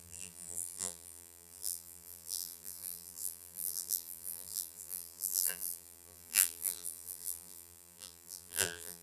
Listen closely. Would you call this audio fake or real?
fake